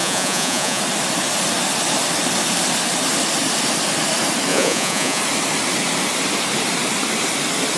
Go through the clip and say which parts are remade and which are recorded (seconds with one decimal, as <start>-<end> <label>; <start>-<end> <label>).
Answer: 0.0-0.8 remade; 0.8-4.5 recorded; 4.5-5.2 remade; 5.2-7.8 recorded